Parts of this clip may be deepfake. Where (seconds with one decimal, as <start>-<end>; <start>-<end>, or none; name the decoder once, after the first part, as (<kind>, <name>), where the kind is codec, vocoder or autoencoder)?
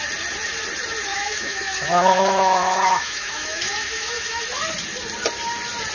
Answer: 1.1-4.4 (autoencoder, DAC-VAE)